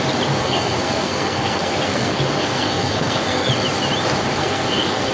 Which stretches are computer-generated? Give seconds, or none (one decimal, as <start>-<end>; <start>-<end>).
0.4-3.5; 4.4-5.1